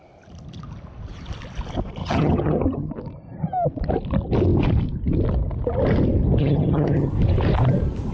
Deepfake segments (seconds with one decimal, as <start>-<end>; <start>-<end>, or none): 2.0-2.9; 6.4-7.1